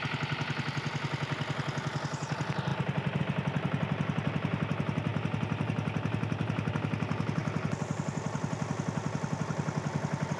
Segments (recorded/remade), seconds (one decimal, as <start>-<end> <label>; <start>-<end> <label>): 0.0-10.4 recorded